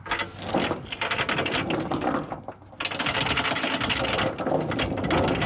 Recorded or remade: recorded